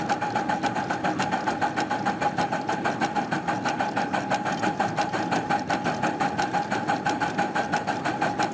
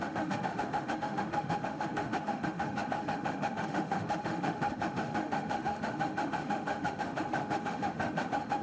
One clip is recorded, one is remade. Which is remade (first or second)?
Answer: second